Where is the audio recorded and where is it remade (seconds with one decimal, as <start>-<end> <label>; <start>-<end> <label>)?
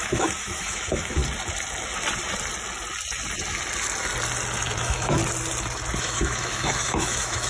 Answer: 0.0-1.2 remade; 1.2-4.8 recorded; 4.8-5.2 remade; 5.2-6.0 recorded; 6.0-7.5 remade